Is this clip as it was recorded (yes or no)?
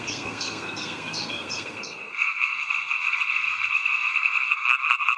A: no